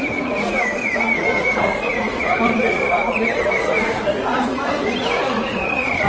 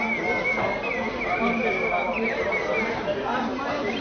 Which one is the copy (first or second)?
first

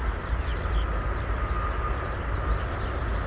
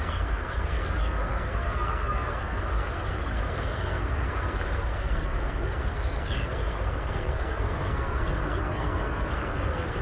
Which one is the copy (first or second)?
second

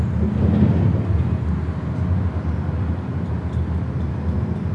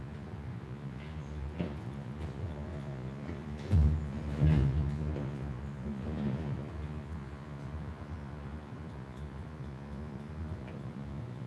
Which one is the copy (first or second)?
second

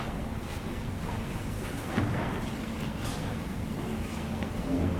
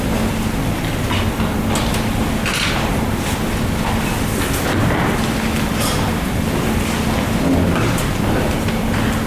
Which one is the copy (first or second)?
first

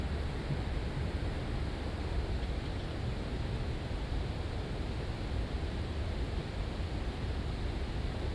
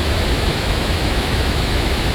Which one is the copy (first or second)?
second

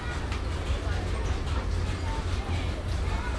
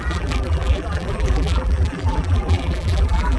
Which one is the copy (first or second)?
second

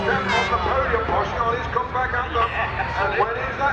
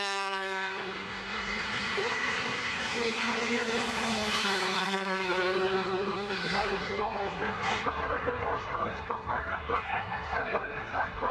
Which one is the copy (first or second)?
second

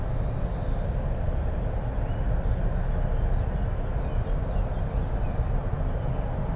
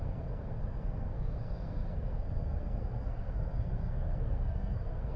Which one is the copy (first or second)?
second